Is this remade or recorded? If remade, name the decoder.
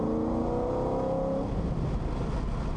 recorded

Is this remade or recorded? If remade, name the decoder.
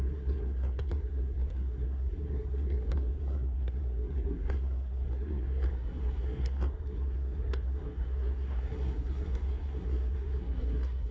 remade, codec, SNAC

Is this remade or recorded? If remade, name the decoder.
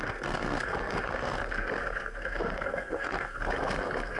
remade, codec, SNAC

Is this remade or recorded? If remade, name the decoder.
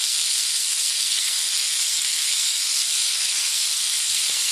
remade, codec, SNAC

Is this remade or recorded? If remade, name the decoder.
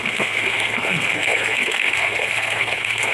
remade, codec, SNAC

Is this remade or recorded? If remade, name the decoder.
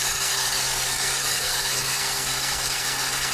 remade, codec, SNAC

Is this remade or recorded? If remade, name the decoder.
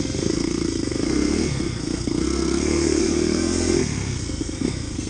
remade, codec, SNAC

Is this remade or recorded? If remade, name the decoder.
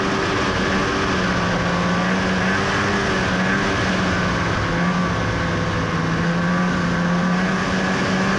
recorded